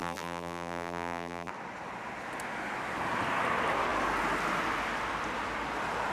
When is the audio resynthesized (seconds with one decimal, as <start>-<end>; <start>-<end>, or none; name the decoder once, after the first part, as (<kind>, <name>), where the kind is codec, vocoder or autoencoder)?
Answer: 0.0-1.5 (vocoder, BigVGAN v2)

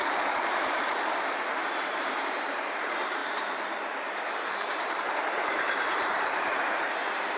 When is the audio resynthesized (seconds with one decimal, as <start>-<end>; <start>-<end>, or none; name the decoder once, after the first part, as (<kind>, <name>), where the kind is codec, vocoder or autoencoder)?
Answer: 0.0-3.2 (vocoder, BigVGAN v2); 4.5-7.4

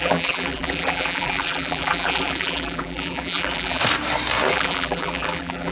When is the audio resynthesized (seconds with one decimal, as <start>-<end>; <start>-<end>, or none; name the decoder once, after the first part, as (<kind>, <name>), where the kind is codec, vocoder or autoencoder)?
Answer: 0.0-3.8 (vocoder, BigVGAN v2); 4.5-5.7

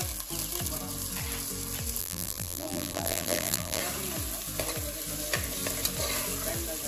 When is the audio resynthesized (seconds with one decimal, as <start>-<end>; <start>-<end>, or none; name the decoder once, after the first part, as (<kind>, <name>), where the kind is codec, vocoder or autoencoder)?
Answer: 2.0-3.8 (vocoder, BigVGAN v2)

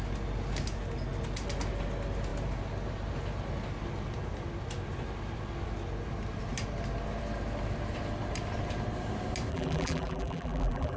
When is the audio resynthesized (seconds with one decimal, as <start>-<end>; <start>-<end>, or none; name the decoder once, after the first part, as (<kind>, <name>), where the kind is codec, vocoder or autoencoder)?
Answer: 9.5-11.0 (vocoder, BigVGAN v2)